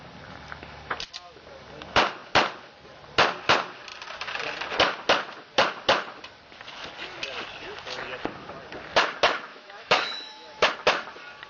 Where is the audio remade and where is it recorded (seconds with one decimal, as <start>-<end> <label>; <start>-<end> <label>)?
0.0-9.5 recorded; 9.5-10.7 remade; 10.7-11.5 recorded

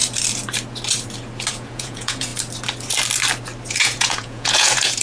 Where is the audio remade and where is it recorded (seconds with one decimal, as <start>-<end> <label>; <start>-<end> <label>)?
0.0-1.5 recorded; 1.5-2.3 remade; 2.3-3.7 recorded; 3.7-5.0 remade

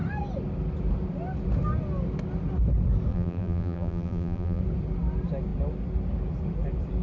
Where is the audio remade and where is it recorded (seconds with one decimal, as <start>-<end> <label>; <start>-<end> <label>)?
0.0-3.1 recorded; 3.1-4.6 remade; 4.6-7.0 recorded

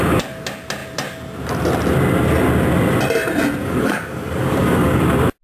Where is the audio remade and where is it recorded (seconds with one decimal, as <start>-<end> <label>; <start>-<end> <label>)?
0.0-3.6 recorded; 3.6-5.0 remade; 5.0-5.4 recorded

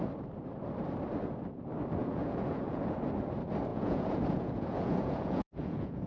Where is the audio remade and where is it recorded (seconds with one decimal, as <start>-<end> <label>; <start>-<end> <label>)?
0.0-2.0 recorded; 2.0-2.8 remade; 2.8-3.7 recorded; 3.7-6.1 remade

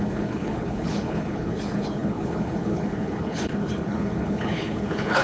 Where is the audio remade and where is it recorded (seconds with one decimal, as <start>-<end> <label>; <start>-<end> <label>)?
0.0-5.2 remade